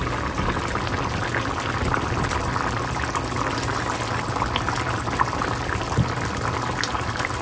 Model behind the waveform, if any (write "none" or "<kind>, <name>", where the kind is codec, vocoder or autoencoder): none